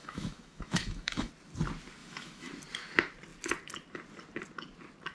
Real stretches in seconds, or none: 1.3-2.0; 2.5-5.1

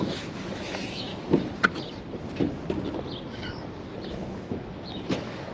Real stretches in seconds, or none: 1.1-4.1

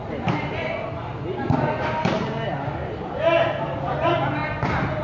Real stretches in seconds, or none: 0.0-5.0

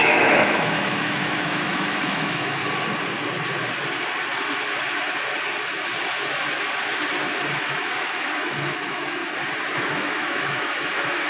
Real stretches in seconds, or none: 2.6-7.6; 9.2-9.8

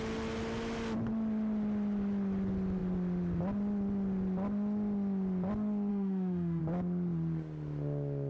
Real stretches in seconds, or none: 0.0-5.9; 6.6-8.3

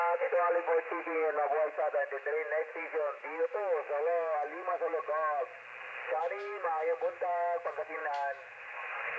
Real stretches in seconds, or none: 4.5-6.2

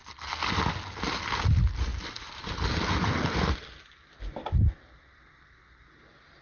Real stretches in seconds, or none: 0.0-6.4